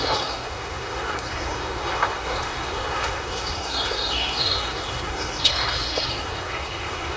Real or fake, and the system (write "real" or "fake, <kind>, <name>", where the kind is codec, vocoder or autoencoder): fake, codec, SNAC